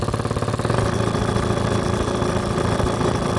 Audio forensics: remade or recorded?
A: recorded